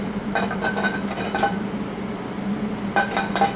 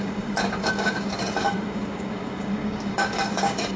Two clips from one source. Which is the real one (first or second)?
first